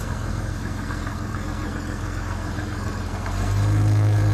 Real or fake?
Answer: fake